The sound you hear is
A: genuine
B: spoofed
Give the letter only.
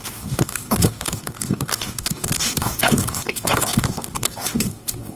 B